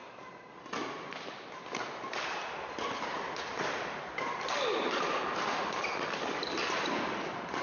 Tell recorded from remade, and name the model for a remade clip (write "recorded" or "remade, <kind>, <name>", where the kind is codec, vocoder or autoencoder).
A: recorded